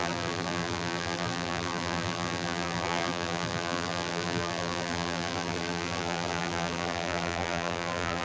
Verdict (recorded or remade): remade